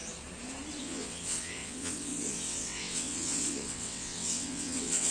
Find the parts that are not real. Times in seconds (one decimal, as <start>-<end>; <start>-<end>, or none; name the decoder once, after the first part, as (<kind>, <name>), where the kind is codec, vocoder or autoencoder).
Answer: 0.8-5.1 (vocoder, WaveNeXt)